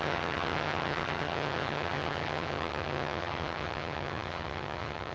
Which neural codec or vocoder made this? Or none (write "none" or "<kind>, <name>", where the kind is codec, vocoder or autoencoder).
vocoder, HiFi-GAN